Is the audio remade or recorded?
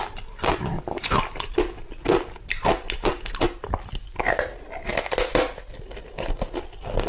recorded